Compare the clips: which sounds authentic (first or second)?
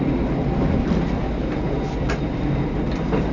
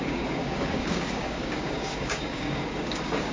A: first